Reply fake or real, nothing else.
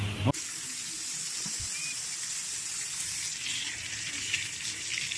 real